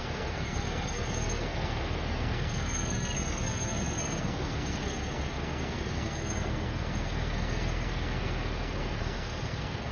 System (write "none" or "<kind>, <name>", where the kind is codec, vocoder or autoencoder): codec, SNAC